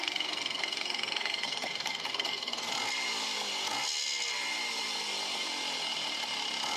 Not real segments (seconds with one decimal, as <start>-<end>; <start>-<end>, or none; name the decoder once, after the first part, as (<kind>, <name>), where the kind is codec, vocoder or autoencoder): 0.0-2.7 (codec, SNAC)